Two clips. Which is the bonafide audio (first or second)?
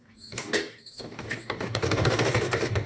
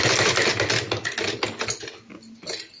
second